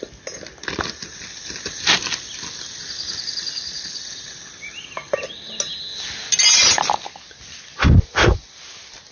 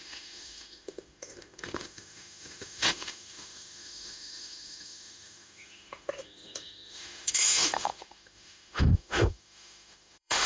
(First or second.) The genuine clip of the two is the first